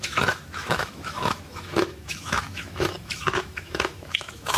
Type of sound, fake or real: fake